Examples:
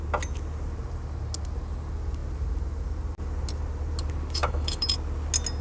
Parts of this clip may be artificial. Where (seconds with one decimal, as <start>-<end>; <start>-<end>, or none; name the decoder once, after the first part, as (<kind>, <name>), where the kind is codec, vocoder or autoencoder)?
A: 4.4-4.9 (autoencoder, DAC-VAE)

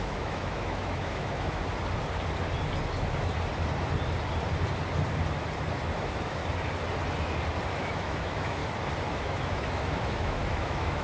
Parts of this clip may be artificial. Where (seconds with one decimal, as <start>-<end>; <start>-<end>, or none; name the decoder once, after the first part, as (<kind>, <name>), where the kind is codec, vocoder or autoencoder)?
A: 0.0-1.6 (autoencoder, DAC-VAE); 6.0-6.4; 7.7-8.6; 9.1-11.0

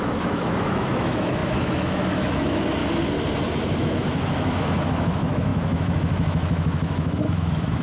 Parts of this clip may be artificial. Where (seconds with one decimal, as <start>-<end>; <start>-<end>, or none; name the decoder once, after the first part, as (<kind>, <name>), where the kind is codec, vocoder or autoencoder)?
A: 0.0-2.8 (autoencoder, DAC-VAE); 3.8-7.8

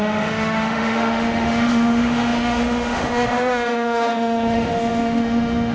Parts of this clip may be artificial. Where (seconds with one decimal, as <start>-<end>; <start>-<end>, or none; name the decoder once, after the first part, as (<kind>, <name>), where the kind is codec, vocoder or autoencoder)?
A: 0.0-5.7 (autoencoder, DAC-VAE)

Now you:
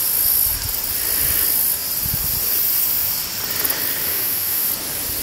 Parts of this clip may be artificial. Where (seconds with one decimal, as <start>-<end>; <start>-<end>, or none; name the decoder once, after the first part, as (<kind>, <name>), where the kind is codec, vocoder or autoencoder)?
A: 4.1-4.7 (autoencoder, DAC-VAE)

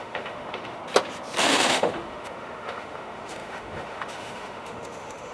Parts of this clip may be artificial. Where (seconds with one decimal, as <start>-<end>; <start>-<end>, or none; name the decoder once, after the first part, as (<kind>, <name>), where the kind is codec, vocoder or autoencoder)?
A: 0.0-0.8 (autoencoder, DAC-VAE); 1.4-5.3

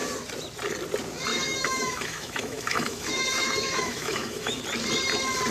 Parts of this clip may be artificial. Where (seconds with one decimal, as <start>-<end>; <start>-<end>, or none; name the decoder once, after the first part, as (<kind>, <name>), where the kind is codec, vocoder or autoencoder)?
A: 1.3-4.6 (autoencoder, DAC-VAE)

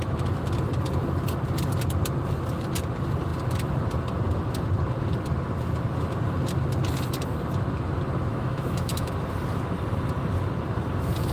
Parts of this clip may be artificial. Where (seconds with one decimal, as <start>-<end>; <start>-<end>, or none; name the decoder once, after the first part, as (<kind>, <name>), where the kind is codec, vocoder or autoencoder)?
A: 8.3-9.1 (autoencoder, DAC-VAE)